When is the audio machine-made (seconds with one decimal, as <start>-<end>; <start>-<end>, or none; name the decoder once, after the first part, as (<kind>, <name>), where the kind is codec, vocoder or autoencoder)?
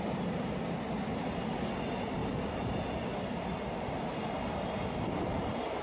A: none